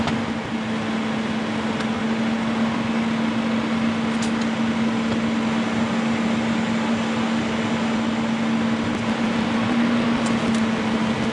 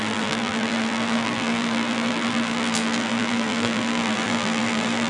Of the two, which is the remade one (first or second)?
second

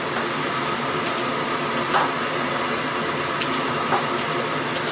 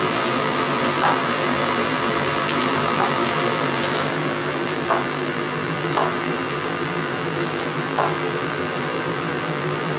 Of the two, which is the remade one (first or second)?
second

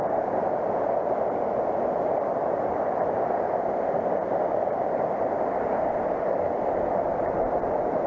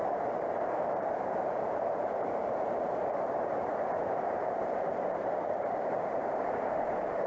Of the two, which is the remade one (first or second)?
second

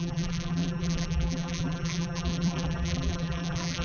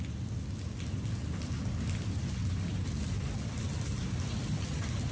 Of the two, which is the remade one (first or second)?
first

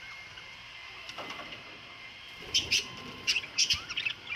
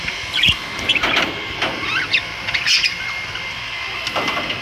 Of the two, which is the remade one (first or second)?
first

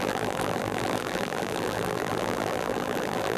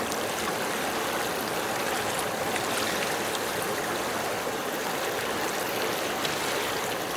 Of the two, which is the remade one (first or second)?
first